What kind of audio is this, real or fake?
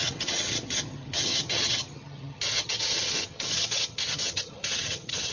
fake